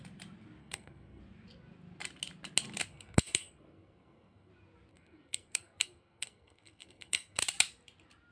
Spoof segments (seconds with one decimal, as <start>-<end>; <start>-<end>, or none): 0.6-1.2; 2.9-4.5; 4.9-7.4